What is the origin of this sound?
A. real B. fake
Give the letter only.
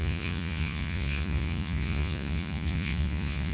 B